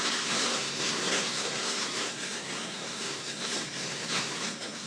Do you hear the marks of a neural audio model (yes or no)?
yes